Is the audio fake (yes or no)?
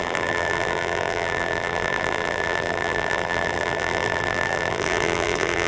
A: yes